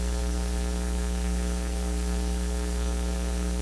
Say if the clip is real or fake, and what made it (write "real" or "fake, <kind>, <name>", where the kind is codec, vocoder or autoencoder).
fake, codec, SNAC